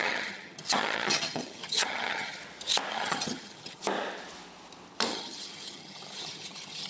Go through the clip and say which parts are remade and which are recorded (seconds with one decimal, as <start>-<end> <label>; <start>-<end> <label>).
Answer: 0.0-2.4 remade; 2.4-2.9 recorded; 2.9-3.8 remade; 3.8-5.1 recorded; 5.1-6.9 remade